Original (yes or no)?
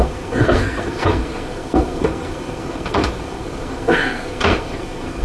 no